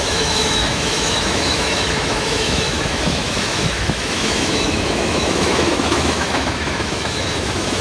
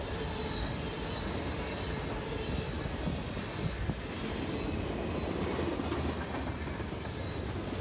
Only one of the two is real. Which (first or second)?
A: second